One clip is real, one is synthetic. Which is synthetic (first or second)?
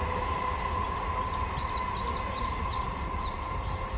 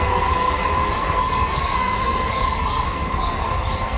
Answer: second